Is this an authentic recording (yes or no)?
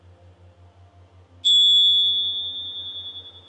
yes